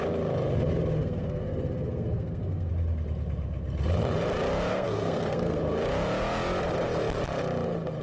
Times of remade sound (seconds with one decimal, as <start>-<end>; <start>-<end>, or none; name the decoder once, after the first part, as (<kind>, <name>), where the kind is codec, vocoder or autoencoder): 1.0-2.7 (codec, SNAC); 4.7-5.6